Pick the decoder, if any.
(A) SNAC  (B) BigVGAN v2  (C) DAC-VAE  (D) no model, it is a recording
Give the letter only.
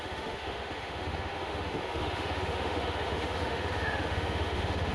C